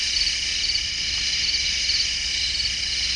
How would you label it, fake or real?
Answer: real